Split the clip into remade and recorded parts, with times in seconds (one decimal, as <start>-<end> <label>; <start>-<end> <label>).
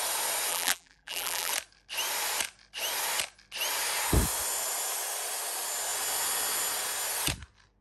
0.0-0.5 recorded; 0.5-1.5 remade; 1.5-7.8 recorded